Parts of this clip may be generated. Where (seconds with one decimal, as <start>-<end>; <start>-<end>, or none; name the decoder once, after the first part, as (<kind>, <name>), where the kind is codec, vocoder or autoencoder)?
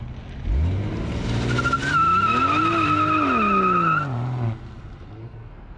5.2-5.8 (codec, SNAC)